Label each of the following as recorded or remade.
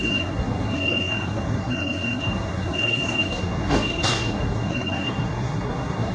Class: remade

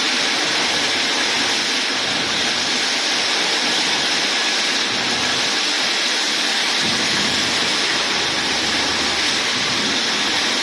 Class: recorded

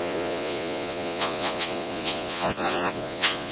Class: remade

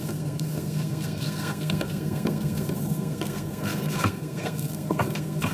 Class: remade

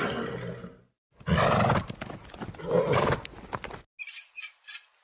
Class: recorded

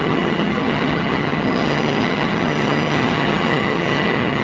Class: remade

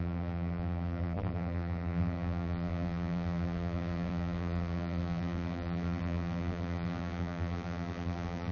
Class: remade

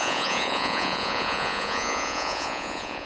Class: remade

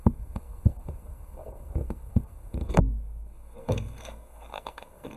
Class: remade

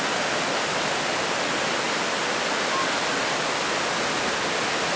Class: recorded